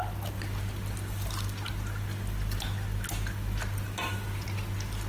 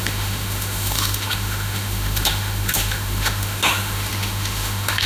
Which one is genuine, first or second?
first